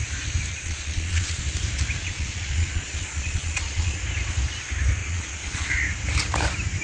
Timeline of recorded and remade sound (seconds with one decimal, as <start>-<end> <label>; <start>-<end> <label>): 0.0-0.5 recorded; 0.5-1.4 remade; 1.4-2.0 recorded; 2.0-4.0 remade; 4.0-5.0 recorded; 5.0-5.7 remade; 5.7-6.8 recorded